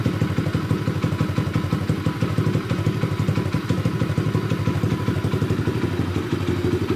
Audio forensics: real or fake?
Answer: real